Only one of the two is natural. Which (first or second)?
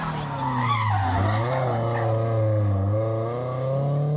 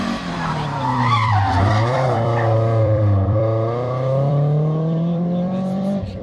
first